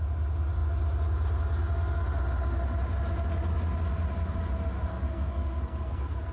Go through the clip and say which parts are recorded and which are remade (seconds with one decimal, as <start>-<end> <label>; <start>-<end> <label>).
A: 0.0-4.9 recorded; 4.9-6.3 remade